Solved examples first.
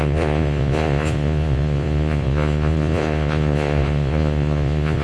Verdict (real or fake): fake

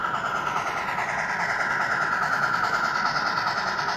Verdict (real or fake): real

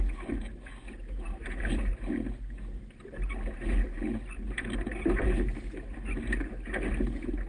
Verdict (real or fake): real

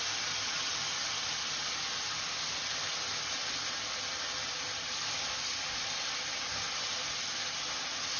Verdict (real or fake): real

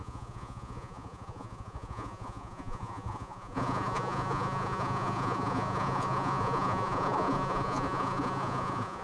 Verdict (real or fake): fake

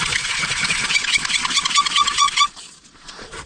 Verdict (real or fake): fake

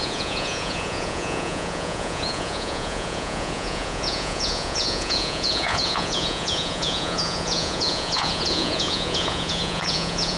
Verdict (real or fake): fake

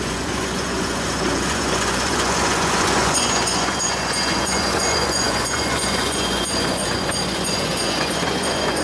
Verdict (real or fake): fake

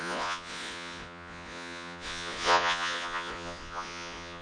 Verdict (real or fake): fake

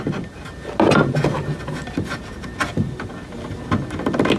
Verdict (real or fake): real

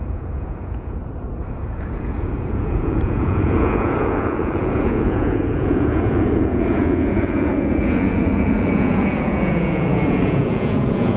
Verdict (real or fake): fake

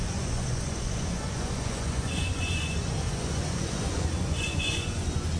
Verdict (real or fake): fake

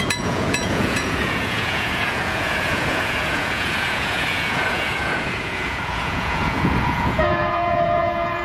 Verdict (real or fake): fake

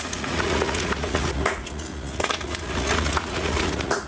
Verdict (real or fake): fake